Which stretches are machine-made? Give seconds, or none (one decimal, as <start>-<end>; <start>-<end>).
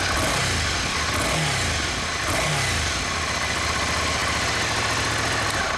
none